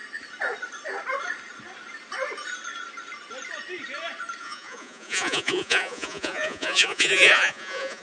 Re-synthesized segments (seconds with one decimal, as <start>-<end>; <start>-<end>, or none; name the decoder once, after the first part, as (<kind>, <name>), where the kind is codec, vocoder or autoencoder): 4.4-8.0 (vocoder, Vocos)